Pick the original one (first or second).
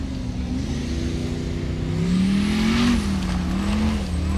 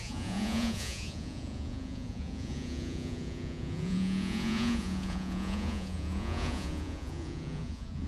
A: first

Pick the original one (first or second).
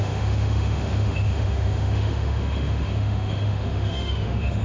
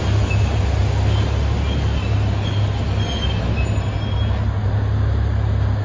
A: second